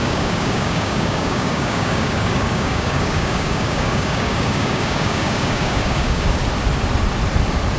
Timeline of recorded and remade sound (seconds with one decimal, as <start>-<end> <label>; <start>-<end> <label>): 0.0-6.4 remade; 6.4-7.8 recorded